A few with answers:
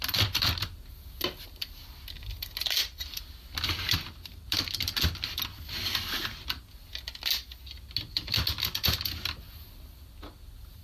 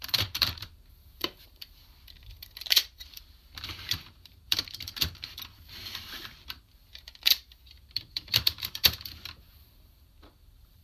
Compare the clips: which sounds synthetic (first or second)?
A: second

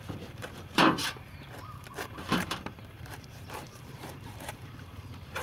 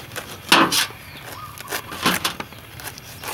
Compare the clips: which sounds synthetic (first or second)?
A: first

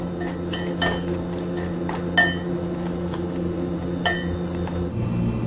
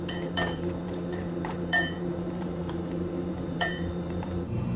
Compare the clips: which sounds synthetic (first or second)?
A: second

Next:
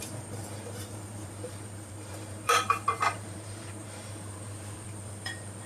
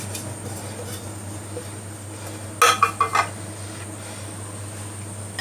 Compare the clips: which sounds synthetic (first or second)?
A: first